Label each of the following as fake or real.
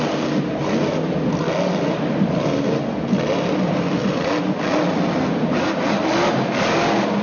real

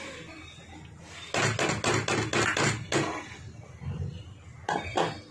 real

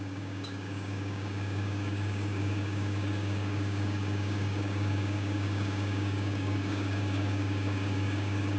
fake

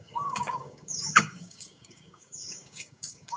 fake